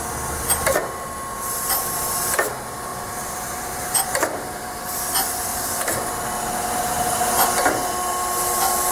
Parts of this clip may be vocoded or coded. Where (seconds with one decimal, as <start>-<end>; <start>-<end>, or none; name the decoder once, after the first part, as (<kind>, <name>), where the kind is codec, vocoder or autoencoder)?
2.9-4.8 (vocoder, BigVGAN v2); 5.5-6.1